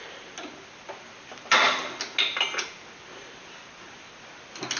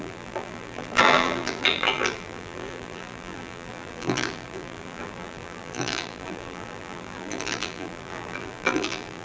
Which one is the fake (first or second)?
second